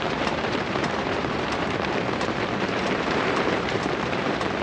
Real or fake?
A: fake